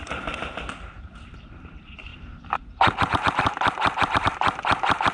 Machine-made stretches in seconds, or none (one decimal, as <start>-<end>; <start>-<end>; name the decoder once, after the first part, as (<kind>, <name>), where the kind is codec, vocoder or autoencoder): none